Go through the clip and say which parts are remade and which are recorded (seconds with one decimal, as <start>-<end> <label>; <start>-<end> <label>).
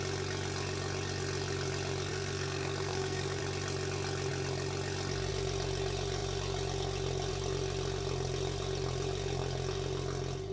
0.0-2.1 recorded; 2.1-3.4 remade; 3.4-10.5 recorded